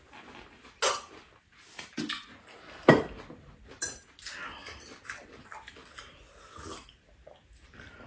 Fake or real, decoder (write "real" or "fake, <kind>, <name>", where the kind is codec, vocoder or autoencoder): real